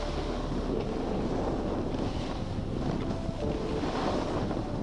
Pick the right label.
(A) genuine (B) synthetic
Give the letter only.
A